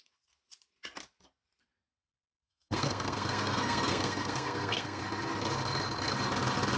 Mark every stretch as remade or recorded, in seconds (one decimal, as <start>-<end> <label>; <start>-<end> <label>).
0.0-1.9 recorded; 1.9-5.0 remade; 5.0-6.8 recorded